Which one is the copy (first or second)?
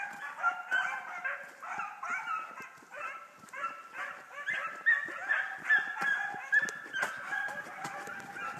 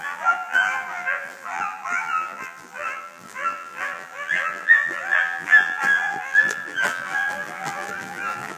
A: second